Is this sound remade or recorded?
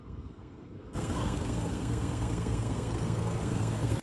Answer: remade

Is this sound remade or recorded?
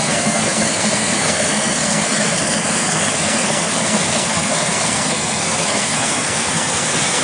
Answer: remade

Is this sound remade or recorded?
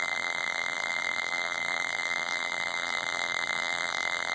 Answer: remade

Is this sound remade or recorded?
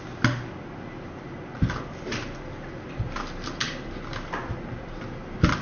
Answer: recorded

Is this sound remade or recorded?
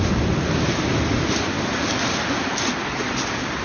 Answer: recorded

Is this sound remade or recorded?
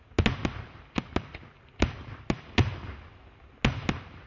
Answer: recorded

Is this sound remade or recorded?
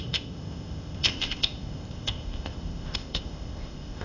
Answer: remade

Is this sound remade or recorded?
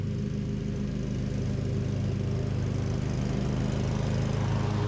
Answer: recorded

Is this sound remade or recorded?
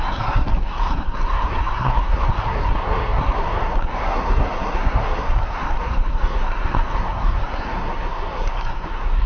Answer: remade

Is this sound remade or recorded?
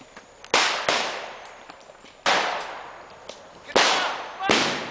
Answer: recorded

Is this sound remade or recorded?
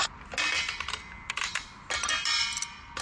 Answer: recorded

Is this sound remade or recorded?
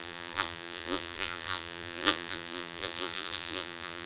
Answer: remade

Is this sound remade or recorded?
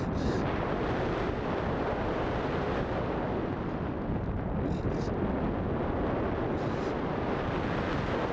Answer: recorded